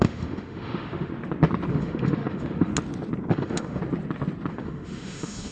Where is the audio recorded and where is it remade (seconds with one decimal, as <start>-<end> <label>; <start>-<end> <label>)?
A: 0.0-1.1 remade; 1.1-1.7 recorded; 1.7-2.7 remade; 2.7-3.3 recorded; 3.3-3.8 remade; 3.8-4.5 recorded; 4.5-5.5 remade